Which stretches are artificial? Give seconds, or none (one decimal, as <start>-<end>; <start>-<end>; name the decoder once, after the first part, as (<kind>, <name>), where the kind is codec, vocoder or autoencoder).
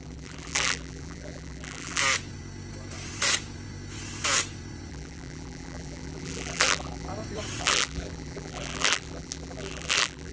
0.0-2.0 (vocoder, BigVGAN v2); 4.9-7.1; 7.6-10.3